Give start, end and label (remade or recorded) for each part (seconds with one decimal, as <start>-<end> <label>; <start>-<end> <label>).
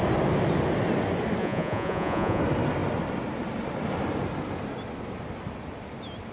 0.0-1.4 recorded; 1.4-2.4 remade; 2.4-6.3 recorded